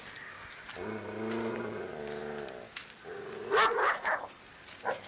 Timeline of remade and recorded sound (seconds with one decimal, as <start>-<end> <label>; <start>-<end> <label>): 0.0-3.8 recorded; 3.8-4.4 remade; 4.4-5.1 recorded